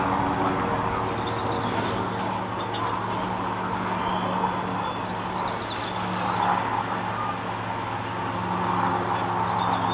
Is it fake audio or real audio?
real